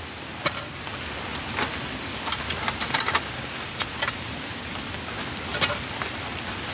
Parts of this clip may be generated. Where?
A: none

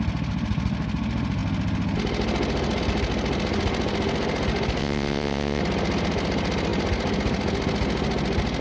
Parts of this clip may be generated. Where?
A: 4.8-5.6 (vocoder, WaveNeXt)

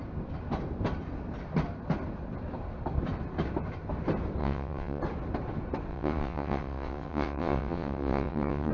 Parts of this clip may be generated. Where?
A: 4.4-5.0 (vocoder, WaveNeXt); 5.9-8.7

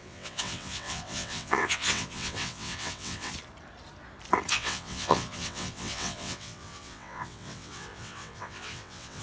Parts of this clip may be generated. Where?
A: 0.0-3.3 (vocoder, WaveNeXt); 4.5-9.2

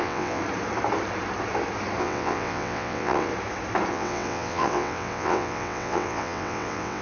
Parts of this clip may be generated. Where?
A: 0.0-0.4 (vocoder, WaveNeXt); 2.0-3.3; 3.9-7.0